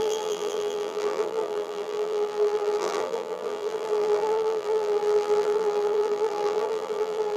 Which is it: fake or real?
fake